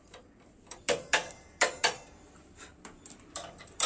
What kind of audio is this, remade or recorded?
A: remade